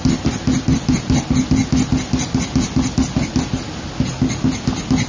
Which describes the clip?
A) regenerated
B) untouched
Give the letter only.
B